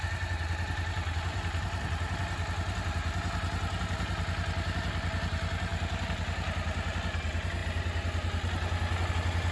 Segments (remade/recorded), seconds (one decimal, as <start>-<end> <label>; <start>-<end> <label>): 0.0-9.5 recorded